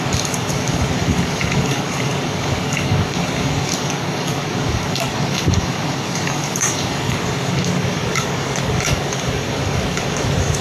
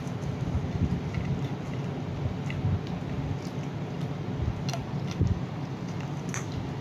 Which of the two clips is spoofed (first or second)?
first